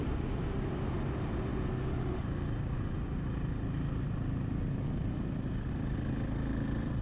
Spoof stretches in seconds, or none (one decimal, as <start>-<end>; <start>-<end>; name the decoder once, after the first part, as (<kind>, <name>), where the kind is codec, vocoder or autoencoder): 0.0-1.5 (vocoder, BigVGAN v2); 5.7-7.0